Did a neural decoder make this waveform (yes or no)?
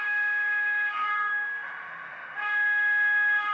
yes